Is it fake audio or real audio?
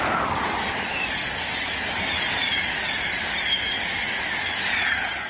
real